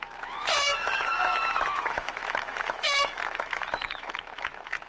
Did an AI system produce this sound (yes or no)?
yes